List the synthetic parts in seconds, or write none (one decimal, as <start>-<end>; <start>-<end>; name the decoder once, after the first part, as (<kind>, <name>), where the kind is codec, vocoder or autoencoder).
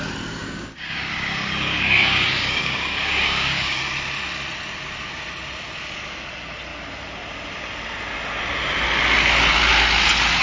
0.4-3.8 (codec, DAC)